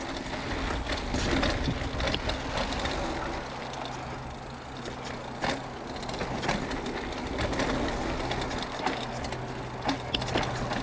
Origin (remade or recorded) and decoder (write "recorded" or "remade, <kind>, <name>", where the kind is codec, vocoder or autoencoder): recorded